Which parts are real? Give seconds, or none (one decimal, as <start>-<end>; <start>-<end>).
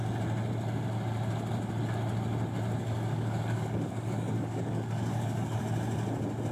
0.0-2.8; 5.6-6.5